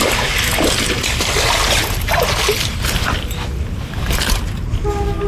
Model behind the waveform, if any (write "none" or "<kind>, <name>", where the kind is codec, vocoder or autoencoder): none